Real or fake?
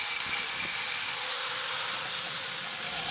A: real